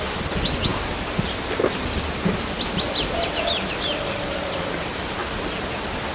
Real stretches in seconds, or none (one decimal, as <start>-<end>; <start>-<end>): 0.0-6.1